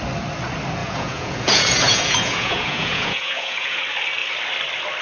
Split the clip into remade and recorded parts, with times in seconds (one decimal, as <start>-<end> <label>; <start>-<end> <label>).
0.0-0.8 recorded; 0.8-3.8 remade; 3.8-5.0 recorded